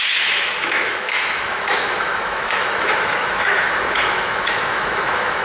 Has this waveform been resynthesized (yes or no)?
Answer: yes